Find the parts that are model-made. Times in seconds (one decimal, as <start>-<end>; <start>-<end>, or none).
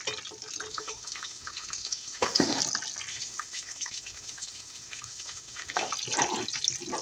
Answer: 0.7-2.6; 3.1-5.9